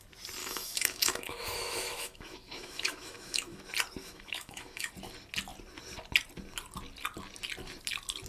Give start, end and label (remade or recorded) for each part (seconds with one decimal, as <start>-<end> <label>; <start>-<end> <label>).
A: 0.0-0.4 recorded; 0.4-3.6 remade; 3.6-4.0 recorded; 4.0-4.9 remade; 4.9-8.3 recorded